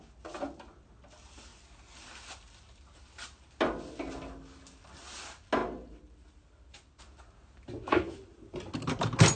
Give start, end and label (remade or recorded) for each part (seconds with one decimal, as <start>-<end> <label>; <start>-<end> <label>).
0.0-9.4 recorded